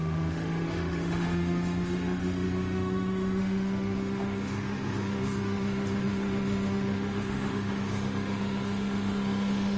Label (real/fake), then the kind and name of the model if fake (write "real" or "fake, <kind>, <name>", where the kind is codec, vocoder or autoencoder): fake, autoencoder, DAC-VAE